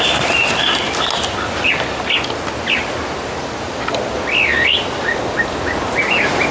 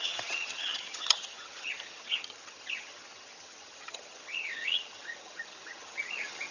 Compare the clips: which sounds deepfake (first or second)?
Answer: second